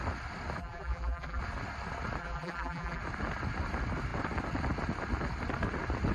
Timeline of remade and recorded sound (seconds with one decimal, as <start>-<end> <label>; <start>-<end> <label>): 0.0-0.6 recorded; 0.6-1.4 remade; 1.4-2.2 recorded; 2.2-3.0 remade; 3.0-6.1 recorded

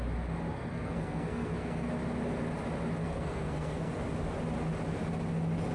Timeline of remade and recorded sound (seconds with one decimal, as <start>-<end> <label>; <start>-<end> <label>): 0.0-0.5 recorded; 0.5-1.9 remade; 1.9-3.0 recorded; 3.0-3.9 remade; 3.9-5.7 recorded